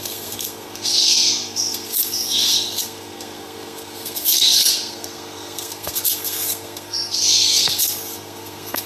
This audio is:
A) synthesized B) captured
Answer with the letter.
A